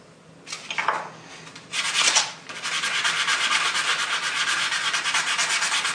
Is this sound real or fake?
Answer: real